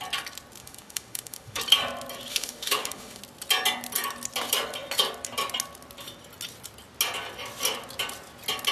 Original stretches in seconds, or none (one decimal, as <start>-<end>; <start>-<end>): 0.0-0.6; 1.6-2.3; 3.2-8.7